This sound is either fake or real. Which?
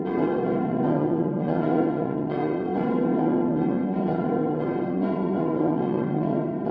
fake